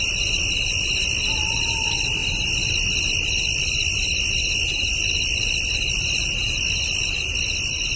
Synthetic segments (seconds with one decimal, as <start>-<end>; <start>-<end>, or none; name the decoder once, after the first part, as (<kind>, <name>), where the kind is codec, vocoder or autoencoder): none